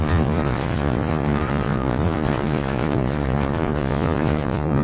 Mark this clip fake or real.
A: fake